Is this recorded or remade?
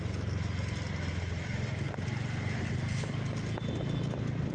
recorded